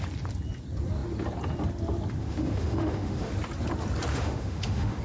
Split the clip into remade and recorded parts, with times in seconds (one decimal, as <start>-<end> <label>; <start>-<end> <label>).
0.0-2.2 recorded; 2.2-3.3 remade; 3.3-4.1 recorded; 4.1-5.0 remade